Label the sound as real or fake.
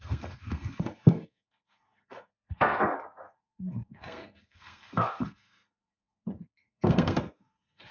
fake